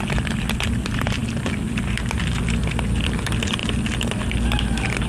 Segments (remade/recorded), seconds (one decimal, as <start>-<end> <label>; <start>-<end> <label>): 0.0-5.1 recorded